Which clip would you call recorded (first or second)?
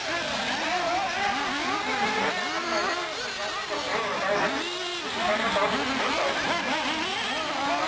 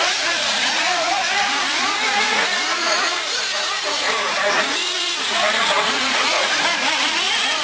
first